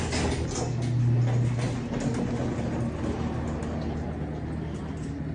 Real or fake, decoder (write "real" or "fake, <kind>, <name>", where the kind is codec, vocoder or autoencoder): real